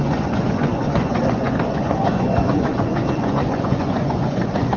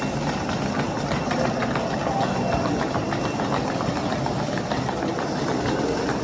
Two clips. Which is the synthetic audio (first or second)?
first